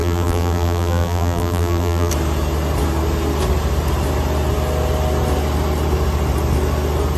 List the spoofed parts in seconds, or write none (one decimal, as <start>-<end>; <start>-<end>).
0.0-2.1